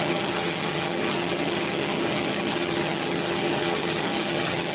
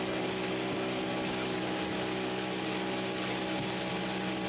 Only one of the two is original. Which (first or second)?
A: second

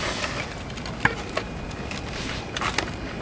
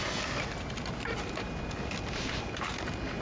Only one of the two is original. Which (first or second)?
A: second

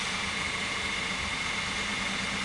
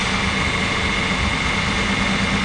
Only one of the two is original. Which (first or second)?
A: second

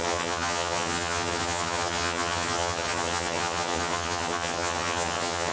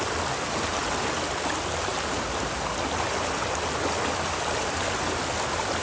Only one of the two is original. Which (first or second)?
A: second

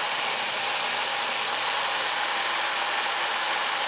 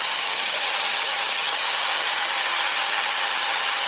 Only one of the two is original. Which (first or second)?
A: first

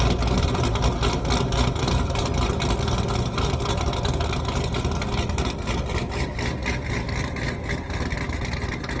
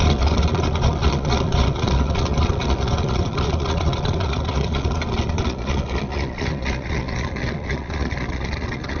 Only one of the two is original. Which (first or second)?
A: first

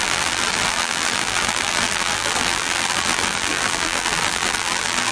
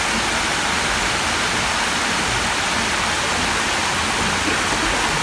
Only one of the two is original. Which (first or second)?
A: second